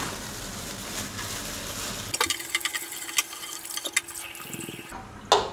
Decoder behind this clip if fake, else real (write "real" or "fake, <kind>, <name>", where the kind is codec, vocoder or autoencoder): real